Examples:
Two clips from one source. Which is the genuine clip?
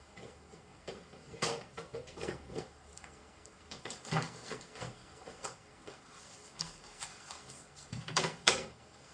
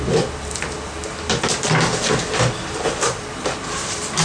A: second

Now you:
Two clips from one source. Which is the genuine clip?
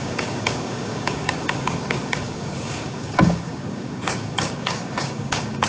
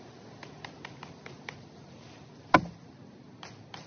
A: second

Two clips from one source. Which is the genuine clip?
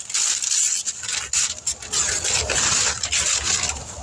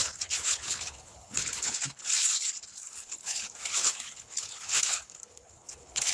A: first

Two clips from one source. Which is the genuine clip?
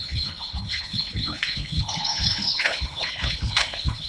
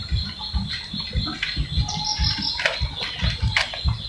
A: second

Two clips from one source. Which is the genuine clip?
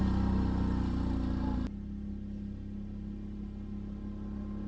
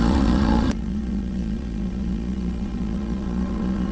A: first